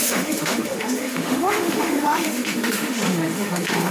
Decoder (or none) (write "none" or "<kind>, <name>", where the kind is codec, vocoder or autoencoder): autoencoder, DAC-VAE